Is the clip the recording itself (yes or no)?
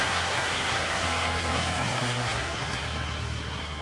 no